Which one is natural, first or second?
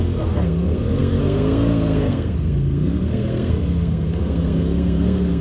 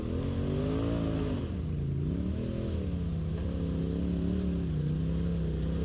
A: second